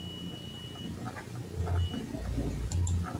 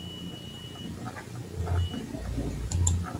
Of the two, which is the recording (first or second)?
first